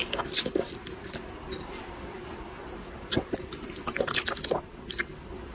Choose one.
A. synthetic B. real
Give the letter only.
B